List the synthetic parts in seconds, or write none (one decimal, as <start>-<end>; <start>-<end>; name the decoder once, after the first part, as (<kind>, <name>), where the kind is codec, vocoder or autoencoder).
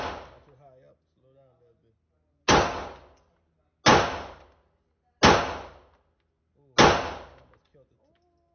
none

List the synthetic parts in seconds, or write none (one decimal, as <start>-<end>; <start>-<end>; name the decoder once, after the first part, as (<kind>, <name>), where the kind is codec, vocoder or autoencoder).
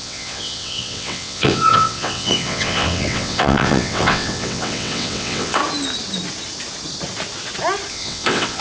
0.0-5.6 (vocoder, WaveNeXt); 7.9-8.6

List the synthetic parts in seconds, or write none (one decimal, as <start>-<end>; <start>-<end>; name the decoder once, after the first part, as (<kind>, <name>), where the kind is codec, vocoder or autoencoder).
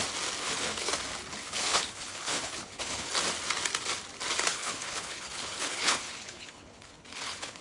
0.4-0.9 (codec, HILCodec); 1.3-3.1; 4.5-7.6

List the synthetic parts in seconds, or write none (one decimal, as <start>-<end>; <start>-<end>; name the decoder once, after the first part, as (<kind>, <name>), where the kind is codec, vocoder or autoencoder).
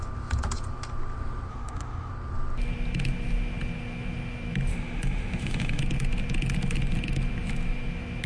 1.5-2.1 (autoencoder, DAC-VAE); 4.7-5.8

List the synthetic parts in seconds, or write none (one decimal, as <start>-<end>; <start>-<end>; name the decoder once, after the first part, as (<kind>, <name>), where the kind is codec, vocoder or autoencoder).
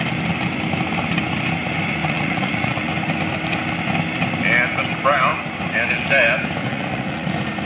2.0-2.9 (vocoder, Vocos); 6.6-7.3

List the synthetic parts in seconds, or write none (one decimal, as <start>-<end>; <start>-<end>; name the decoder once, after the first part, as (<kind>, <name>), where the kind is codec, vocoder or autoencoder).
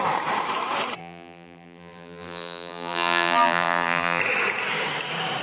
1.0-4.2 (vocoder, BigVGAN v2)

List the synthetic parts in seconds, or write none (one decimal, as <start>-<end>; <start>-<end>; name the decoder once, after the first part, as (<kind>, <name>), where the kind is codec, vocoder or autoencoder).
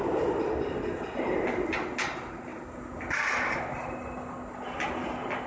none